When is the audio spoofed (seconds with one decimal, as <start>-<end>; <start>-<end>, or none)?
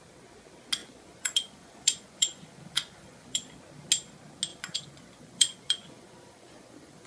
0.8-3.5; 4.5-7.1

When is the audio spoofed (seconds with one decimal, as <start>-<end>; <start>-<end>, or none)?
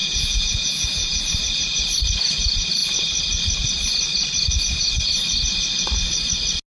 0.0-1.2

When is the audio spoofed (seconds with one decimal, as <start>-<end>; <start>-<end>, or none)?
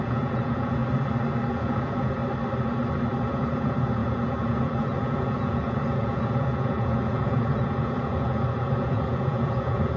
0.0-0.8; 1.5-2.2; 3.2-10.0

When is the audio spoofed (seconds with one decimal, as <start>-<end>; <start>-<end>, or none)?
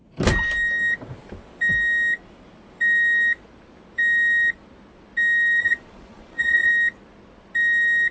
5.6-6.7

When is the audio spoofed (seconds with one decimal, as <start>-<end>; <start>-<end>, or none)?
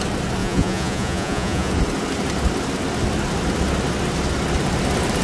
0.4-1.7